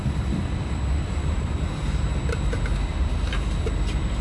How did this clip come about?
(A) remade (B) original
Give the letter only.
A